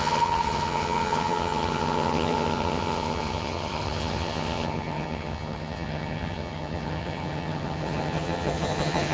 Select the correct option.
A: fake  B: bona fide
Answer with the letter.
A